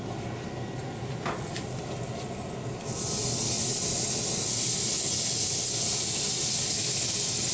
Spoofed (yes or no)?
no